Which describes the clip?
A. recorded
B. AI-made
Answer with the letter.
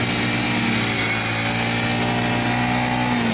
A